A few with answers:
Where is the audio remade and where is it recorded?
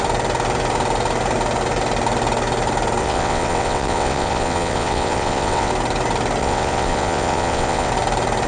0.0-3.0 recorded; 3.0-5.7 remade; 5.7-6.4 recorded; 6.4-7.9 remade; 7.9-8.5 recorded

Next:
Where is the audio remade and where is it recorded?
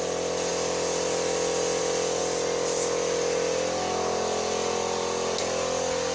0.0-6.1 recorded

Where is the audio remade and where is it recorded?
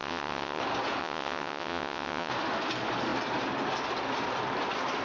0.0-0.6 remade; 0.6-1.0 recorded; 1.0-2.3 remade; 2.3-5.0 recorded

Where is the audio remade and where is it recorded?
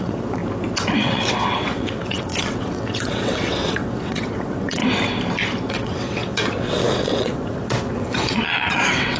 0.0-0.4 remade; 0.4-1.0 recorded; 1.0-4.8 remade; 4.8-5.7 recorded; 5.7-9.2 remade